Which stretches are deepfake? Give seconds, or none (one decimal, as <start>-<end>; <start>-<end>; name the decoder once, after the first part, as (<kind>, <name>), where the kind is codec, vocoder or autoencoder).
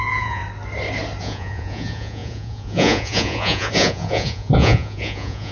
0.0-0.4 (vocoder, Vocos); 1.2-5.5